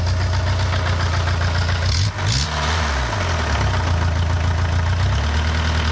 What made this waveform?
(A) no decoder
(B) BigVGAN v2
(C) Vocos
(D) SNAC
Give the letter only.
A